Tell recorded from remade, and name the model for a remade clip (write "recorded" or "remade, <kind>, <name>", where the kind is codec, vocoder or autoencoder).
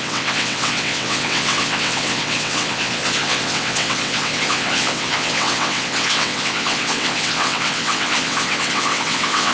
remade, vocoder, WaveNeXt